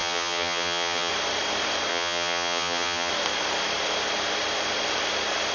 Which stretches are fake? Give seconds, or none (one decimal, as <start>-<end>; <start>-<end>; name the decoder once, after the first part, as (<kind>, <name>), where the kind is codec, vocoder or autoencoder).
0.0-1.1 (vocoder, HiFi-GAN); 1.9-3.1